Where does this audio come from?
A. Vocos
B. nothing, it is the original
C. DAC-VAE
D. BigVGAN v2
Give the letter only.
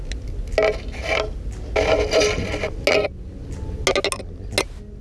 B